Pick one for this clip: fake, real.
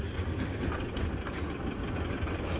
real